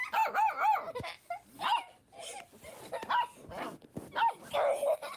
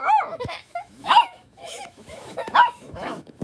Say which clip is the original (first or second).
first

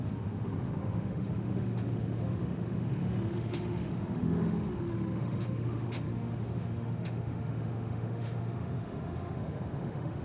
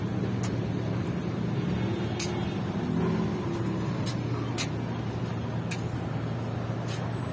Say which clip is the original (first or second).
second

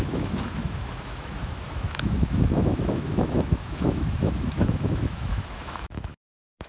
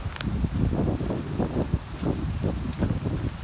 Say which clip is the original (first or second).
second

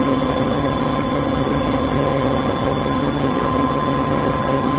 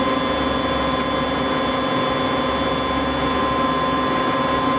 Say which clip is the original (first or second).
second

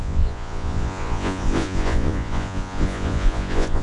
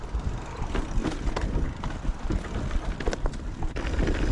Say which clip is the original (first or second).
second